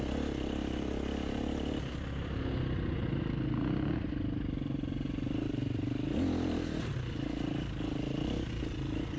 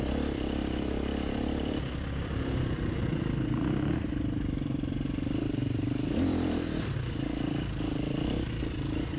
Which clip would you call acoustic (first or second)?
first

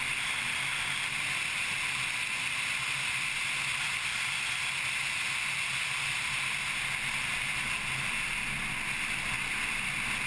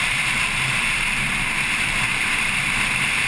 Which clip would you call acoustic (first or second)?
first